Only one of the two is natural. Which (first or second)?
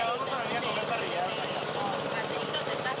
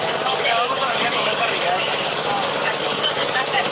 first